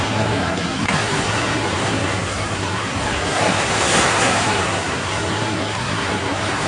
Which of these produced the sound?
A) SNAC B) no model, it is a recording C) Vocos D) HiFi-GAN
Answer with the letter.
A